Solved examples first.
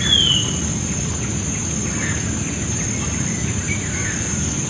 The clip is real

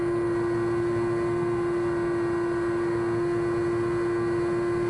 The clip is real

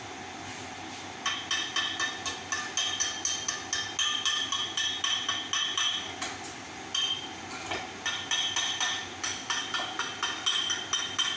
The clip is real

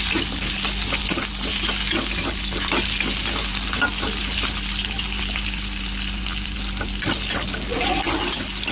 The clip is real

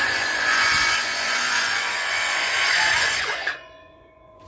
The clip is fake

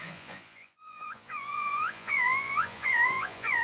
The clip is fake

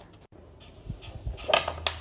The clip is real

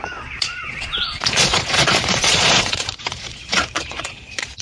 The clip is fake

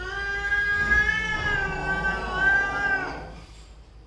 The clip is real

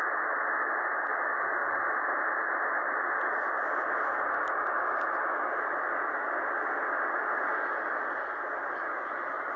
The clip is real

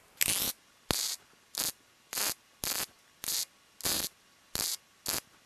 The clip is real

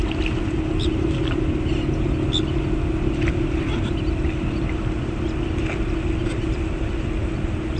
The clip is real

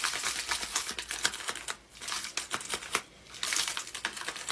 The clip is real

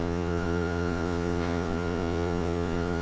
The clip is fake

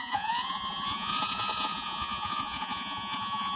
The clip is fake